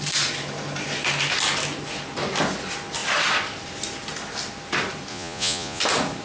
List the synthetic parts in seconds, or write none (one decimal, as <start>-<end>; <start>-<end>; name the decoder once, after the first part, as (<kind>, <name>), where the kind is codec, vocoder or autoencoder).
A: 5.1-5.8 (vocoder, Vocos)